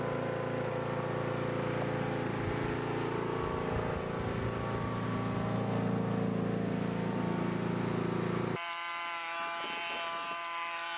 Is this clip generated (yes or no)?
no